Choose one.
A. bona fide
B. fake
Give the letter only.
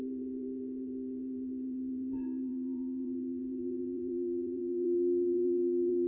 B